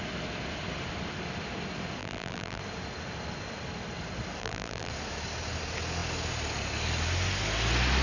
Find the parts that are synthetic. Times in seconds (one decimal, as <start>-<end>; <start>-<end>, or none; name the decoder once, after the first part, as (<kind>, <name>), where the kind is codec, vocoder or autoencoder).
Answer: 2.0-2.6 (vocoder, BigVGAN v2); 4.4-4.9